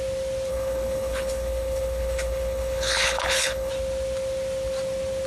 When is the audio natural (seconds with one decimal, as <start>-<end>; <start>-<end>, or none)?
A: 0.0-0.5; 3.7-5.3